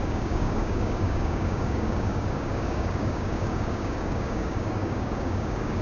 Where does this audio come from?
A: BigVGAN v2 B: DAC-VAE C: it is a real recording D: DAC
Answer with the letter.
D